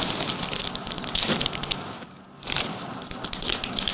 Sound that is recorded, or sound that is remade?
recorded